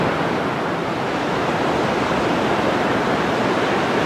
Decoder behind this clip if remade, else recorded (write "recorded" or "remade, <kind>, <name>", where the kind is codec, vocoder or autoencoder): recorded